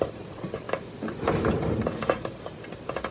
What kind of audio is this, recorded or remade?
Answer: recorded